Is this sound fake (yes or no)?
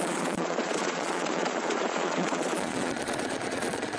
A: yes